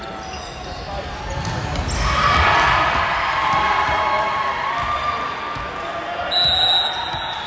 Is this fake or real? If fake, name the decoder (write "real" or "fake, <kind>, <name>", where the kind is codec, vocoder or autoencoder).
real